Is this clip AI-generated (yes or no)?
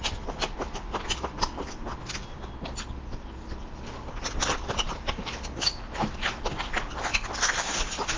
no